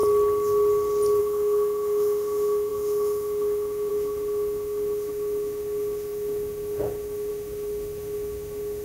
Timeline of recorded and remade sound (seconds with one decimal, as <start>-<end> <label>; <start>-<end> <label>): 0.0-1.2 recorded; 1.2-8.8 remade